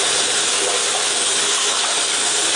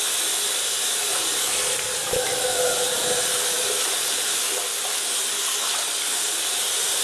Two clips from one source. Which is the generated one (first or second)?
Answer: second